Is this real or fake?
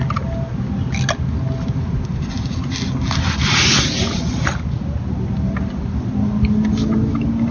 real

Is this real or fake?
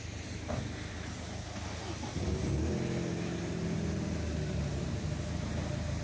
real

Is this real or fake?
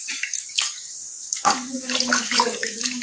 fake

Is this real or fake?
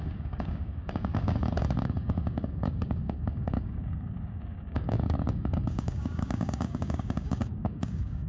fake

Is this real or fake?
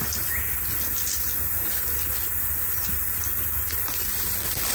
real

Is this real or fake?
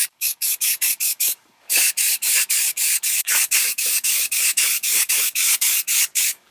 fake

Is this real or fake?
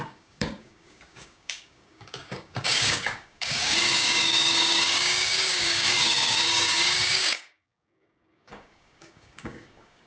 fake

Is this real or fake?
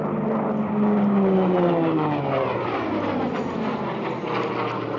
real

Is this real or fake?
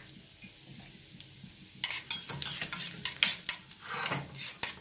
real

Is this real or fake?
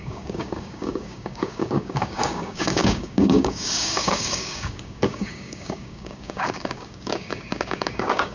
fake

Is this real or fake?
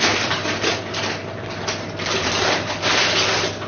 real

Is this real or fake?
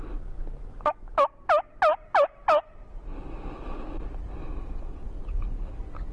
real